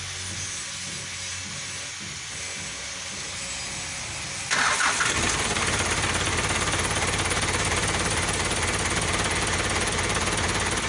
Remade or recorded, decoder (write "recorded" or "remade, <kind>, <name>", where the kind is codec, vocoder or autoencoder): recorded